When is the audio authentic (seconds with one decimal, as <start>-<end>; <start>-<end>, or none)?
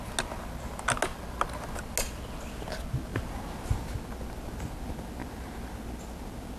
0.0-6.6